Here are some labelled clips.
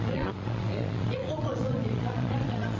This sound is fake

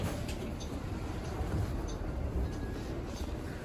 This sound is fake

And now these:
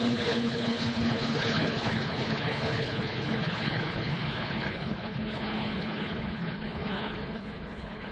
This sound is fake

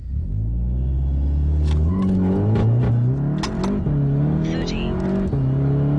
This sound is real